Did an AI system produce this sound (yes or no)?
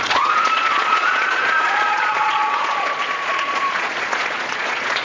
yes